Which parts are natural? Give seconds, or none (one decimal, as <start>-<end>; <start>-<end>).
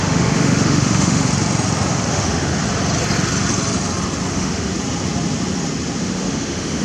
1.3-2.1; 2.5-4.3; 4.7-6.0